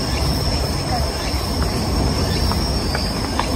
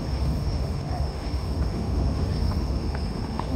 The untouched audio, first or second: first